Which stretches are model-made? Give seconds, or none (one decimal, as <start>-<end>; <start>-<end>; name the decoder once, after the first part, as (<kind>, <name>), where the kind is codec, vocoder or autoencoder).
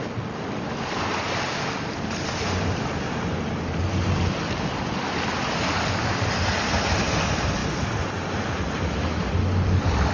none